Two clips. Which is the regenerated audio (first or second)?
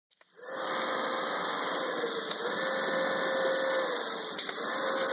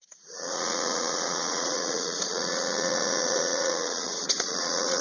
second